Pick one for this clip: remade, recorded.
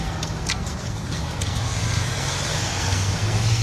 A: remade